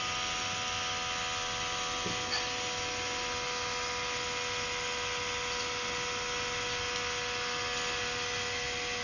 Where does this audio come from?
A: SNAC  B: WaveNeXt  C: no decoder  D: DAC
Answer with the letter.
C